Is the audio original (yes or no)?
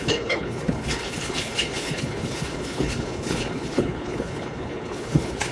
no